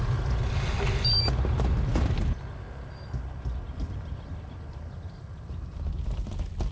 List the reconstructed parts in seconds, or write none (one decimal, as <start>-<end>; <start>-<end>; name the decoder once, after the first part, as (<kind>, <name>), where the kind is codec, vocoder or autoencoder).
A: none